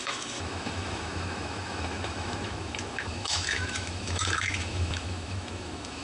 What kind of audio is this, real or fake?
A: fake